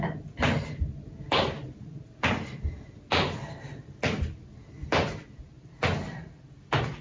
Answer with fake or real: real